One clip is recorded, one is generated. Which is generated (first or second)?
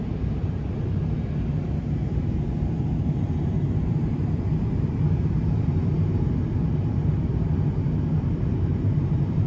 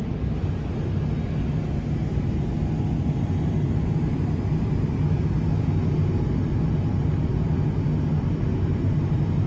first